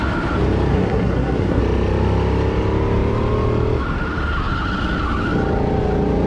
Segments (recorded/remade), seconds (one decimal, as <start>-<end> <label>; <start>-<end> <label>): 0.0-0.7 recorded; 0.7-1.6 remade; 1.6-6.3 recorded